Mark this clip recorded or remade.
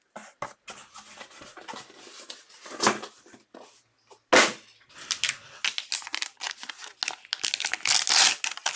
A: recorded